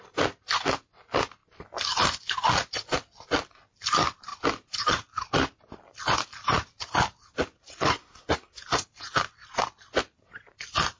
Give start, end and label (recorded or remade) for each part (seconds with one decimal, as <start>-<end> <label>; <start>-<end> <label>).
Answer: 0.0-7.9 recorded; 7.9-8.6 remade; 8.6-11.0 recorded